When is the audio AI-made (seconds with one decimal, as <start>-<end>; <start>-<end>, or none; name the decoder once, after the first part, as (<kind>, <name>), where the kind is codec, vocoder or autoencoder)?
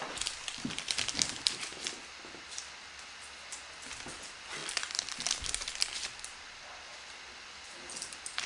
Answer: 0.0-1.7 (vocoder, BigVGAN v2); 3.9-4.6; 5.1-6.9